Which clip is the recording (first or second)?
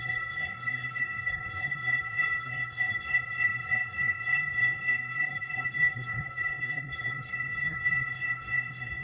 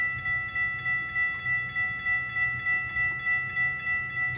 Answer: second